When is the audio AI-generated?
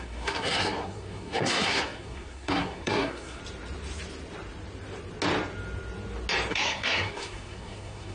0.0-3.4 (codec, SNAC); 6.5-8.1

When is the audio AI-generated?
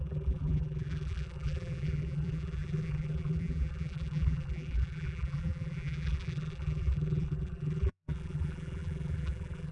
0.0-9.7 (vocoder, BigVGAN v2)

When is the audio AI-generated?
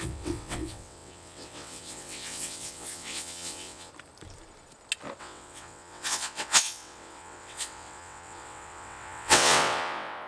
0.0-3.9 (vocoder, WaveNeXt); 5.2-10.3